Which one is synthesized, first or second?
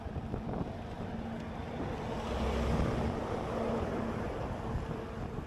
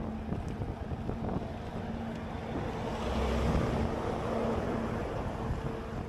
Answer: first